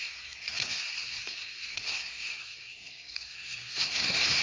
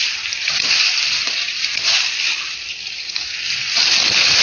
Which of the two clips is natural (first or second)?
second